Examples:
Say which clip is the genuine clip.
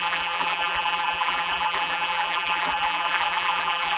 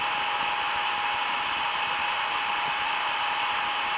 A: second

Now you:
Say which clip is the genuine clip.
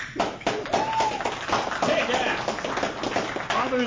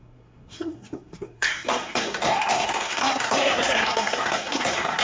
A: first